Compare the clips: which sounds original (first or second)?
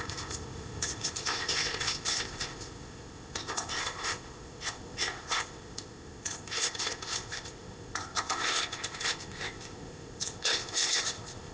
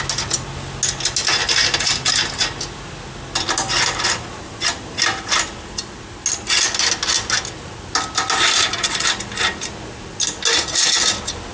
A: second